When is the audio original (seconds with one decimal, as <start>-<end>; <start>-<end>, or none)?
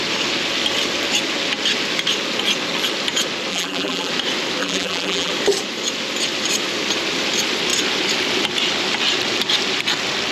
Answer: 0.0-3.5; 4.1-4.6; 5.3-10.3